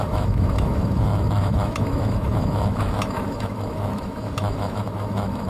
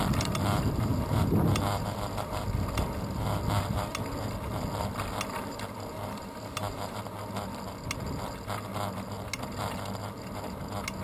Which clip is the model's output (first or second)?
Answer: first